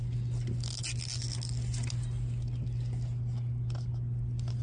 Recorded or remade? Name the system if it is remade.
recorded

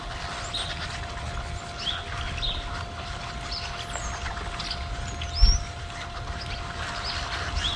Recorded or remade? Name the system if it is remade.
recorded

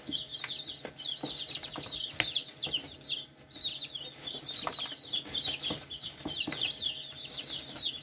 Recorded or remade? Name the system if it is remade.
recorded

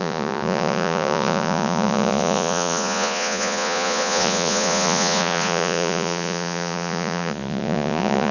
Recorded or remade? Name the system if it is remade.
remade, vocoder, Vocos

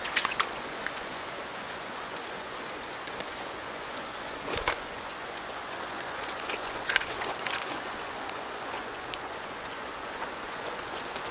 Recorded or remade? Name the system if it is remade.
remade, vocoder, Vocos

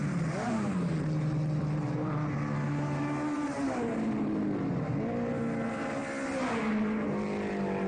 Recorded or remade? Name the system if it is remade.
recorded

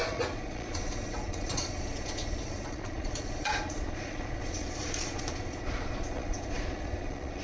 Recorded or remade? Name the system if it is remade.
remade, vocoder, Vocos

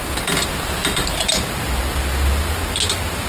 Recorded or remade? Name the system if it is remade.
recorded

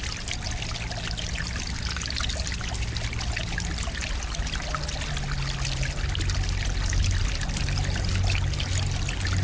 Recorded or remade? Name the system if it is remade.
recorded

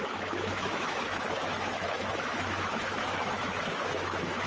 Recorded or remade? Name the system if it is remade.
remade, autoencoder, DAC-VAE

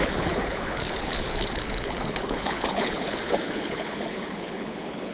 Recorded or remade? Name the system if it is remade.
remade, codec, HILCodec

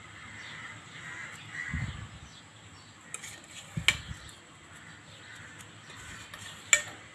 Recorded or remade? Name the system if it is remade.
recorded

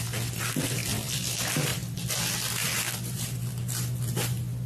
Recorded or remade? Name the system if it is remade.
recorded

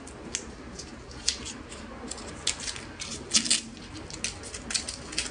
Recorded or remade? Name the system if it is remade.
recorded